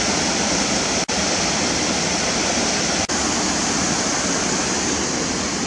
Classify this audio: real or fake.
real